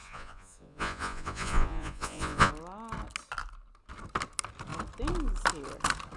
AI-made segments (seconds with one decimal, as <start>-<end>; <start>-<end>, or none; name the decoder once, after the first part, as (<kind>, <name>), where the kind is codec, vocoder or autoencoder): 0.0-2.5 (vocoder, Vocos)